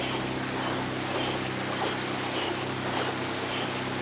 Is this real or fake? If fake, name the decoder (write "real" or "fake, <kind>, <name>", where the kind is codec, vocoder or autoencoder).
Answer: real